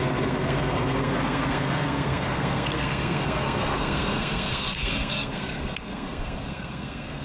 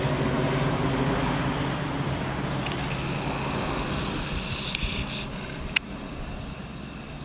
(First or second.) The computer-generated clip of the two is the first